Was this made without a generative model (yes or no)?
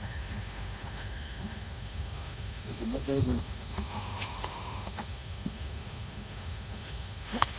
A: no